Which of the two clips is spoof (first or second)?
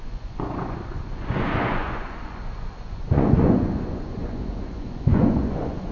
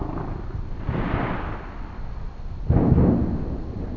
first